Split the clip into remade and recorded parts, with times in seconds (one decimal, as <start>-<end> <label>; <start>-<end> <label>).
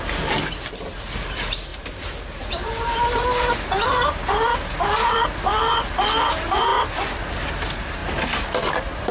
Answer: 0.0-1.7 recorded; 1.7-6.2 remade; 6.2-6.7 recorded; 6.7-7.2 remade; 7.2-9.1 recorded